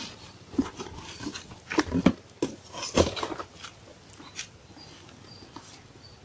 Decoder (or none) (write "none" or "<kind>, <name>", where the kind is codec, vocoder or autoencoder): none